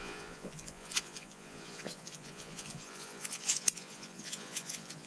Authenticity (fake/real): fake